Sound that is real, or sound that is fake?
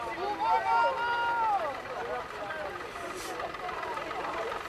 real